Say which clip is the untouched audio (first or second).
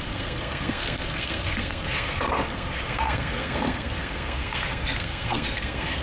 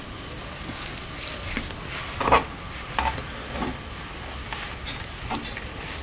second